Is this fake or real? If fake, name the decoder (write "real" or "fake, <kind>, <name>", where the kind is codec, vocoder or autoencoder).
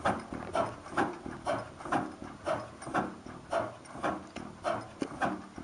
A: real